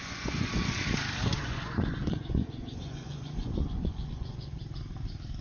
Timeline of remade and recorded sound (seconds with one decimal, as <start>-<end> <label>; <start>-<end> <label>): 0.0-0.5 remade; 0.5-1.4 recorded; 1.4-4.6 remade; 4.6-5.4 recorded